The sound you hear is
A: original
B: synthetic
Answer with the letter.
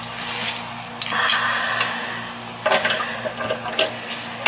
A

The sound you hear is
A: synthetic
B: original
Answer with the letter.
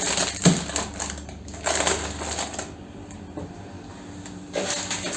B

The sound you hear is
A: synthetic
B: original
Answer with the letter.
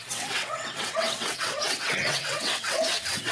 A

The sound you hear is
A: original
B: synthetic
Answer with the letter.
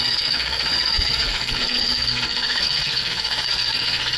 B